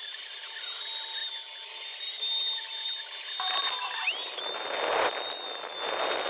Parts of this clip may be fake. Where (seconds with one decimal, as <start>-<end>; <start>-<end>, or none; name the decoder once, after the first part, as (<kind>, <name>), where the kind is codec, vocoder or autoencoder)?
none